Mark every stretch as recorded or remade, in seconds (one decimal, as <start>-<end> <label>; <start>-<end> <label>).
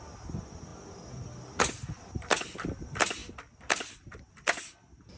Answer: 0.0-5.2 recorded